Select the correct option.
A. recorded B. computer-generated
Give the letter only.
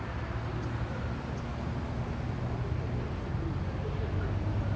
A